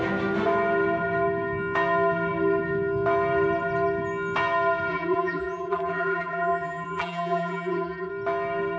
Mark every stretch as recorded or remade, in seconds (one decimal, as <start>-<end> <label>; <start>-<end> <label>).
0.0-4.9 recorded; 4.9-8.1 remade; 8.1-8.8 recorded